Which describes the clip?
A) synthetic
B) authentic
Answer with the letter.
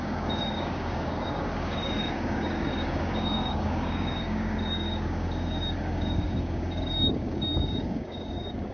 A